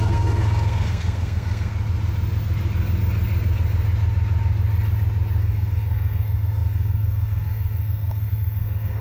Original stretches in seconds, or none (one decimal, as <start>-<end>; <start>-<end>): 1.7-5.4